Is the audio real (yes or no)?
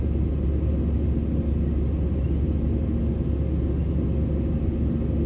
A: yes